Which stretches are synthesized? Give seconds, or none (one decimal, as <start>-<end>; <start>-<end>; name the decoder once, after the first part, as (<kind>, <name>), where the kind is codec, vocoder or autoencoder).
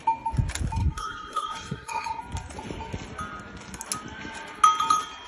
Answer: 0.8-2.2 (codec, SNAC)